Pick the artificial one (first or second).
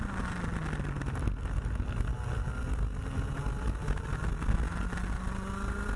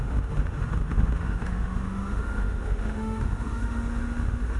second